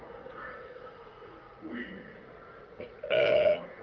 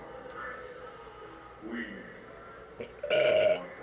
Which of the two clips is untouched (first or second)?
second